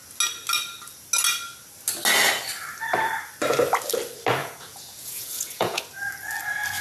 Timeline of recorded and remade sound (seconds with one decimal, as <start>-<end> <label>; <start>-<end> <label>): 0.0-4.4 recorded; 4.4-5.8 remade; 5.8-6.8 recorded